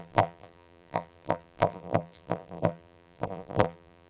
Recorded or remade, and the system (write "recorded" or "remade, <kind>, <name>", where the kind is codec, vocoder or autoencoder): remade, vocoder, BigVGAN v2